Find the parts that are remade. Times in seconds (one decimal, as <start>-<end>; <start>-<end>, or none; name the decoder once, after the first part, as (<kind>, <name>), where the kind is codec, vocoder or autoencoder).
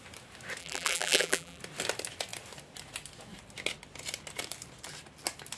0.6-1.6 (vocoder, BigVGAN v2)